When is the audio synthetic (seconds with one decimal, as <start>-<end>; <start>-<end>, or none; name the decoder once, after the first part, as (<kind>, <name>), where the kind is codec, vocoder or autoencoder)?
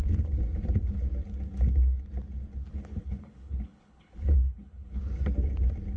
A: 3.0-5.0 (codec, HILCodec)